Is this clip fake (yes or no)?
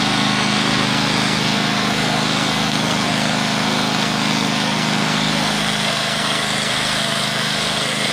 yes